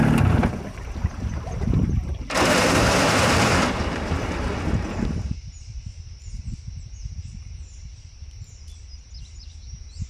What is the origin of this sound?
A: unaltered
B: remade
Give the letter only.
B